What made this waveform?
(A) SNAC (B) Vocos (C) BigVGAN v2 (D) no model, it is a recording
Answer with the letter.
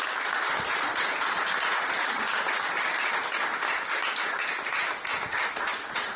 D